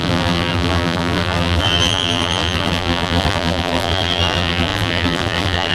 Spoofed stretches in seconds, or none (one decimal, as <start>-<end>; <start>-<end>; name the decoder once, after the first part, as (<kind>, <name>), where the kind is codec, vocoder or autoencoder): 0.0-5.7 (vocoder, BigVGAN v2)